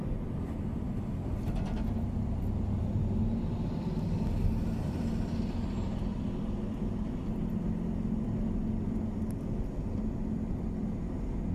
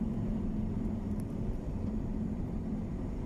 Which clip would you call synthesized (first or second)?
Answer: second